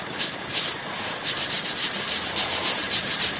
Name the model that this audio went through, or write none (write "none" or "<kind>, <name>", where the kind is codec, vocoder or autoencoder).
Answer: none